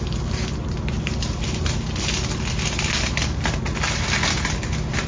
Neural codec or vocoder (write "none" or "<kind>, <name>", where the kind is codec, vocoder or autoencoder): none